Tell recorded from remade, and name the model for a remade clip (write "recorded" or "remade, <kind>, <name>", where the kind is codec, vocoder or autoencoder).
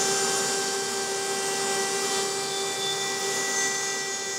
recorded